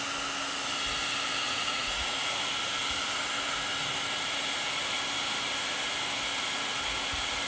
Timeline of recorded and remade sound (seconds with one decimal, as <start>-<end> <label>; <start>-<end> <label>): 0.0-1.4 recorded; 1.4-2.4 remade; 2.4-7.5 recorded